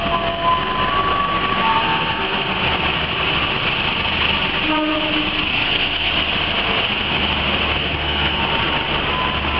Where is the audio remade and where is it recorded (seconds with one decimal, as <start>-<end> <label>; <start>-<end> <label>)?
0.0-1.7 recorded; 1.7-2.5 remade; 2.5-5.5 recorded; 5.5-6.1 remade; 6.1-7.8 recorded; 7.8-8.4 remade; 8.4-9.6 recorded